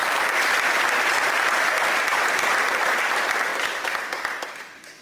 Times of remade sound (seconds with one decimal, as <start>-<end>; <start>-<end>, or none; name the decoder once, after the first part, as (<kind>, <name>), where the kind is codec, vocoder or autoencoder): 0.0-3.0 (vocoder, BigVGAN v2); 3.5-4.0